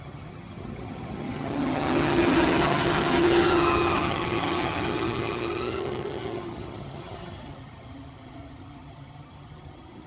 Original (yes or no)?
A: no